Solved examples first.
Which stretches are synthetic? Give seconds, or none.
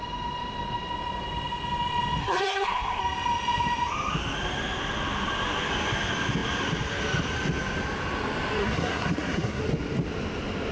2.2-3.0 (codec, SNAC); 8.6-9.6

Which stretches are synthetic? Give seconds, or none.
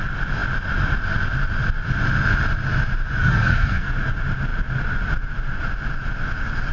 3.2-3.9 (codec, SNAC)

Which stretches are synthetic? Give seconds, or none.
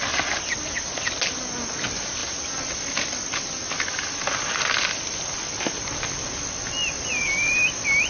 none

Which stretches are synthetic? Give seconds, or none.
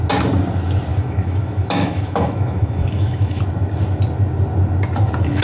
0.9-3.4 (autoencoder, DAC-VAE)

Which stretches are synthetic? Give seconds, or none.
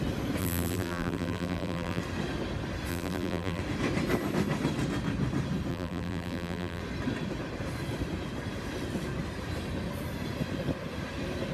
0.4-2.0 (vocoder, BigVGAN v2); 2.9-3.6; 5.7-6.8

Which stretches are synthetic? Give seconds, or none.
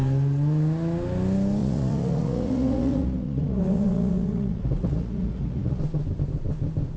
1.6-5.8 (vocoder, Vocos)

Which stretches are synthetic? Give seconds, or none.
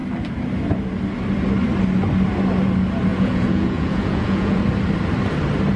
3.1-4.6 (vocoder, Vocos)